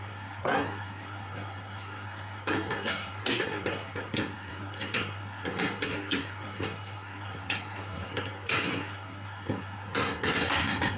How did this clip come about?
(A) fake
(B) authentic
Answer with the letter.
A